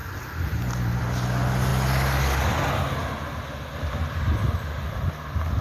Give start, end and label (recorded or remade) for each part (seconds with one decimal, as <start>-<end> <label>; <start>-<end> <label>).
0.0-5.6 recorded